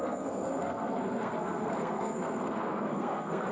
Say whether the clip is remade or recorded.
remade